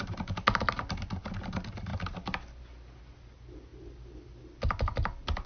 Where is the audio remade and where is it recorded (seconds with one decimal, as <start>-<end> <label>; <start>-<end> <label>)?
0.0-5.5 recorded